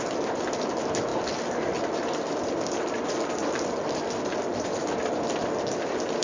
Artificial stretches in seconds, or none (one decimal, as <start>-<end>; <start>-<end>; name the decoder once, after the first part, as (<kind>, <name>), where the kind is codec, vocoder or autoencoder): 1.1-4.8 (vocoder, BigVGAN v2)